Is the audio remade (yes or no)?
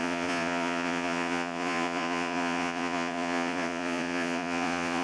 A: yes